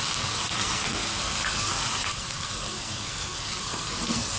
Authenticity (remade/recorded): remade